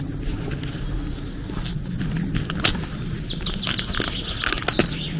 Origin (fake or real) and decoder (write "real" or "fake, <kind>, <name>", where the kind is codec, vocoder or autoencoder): real